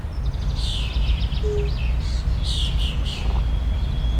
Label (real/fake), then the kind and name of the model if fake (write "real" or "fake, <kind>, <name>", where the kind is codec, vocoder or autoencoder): real